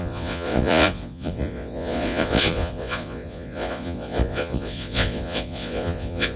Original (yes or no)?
no